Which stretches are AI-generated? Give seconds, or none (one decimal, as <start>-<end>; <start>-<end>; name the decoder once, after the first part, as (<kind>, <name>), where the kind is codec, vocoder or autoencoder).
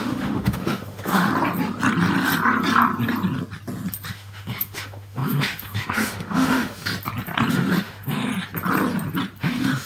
0.0-1.3 (autoencoder, DAC-VAE); 4.1-6.9; 7.5-8.3; 9.4-9.9